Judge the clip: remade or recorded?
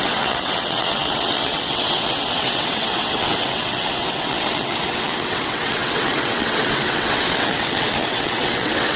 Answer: remade